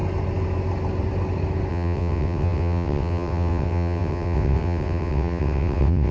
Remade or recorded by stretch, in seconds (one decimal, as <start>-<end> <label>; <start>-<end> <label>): 0.0-1.7 recorded; 1.7-6.1 remade